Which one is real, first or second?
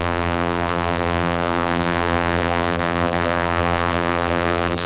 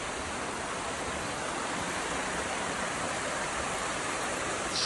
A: second